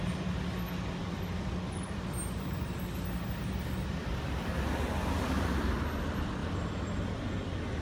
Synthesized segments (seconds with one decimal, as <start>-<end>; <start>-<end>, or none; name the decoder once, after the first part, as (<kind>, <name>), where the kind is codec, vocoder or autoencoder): 1.0-4.5 (vocoder, BigVGAN v2); 6.4-7.2